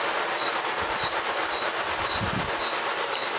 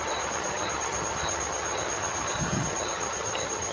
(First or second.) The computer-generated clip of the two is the second